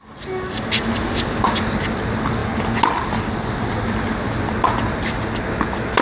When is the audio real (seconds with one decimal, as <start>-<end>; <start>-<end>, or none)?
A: 0.0-6.0